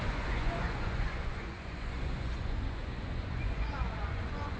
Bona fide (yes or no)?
no